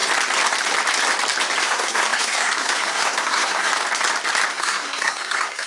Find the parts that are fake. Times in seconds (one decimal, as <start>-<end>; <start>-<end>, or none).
1.6-3.7; 4.5-5.7